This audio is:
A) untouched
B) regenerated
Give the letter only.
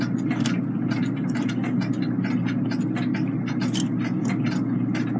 A